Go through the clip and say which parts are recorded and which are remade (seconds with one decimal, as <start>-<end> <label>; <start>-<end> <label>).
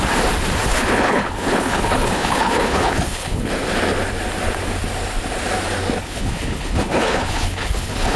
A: 0.0-0.7 recorded; 0.7-3.5 remade; 3.5-6.0 recorded; 6.0-8.2 remade